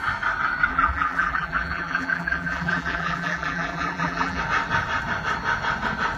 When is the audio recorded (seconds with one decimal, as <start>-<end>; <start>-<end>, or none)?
0.0-0.7; 4.4-6.2